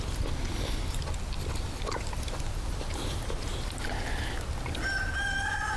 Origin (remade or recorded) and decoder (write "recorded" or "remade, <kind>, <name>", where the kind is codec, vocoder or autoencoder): recorded